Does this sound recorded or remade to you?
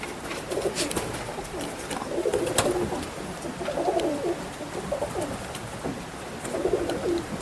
remade